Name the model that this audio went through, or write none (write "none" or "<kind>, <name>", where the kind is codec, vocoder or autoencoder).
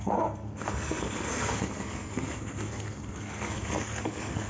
codec, SNAC